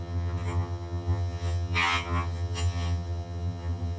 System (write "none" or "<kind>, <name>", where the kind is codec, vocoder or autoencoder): vocoder, HiFi-GAN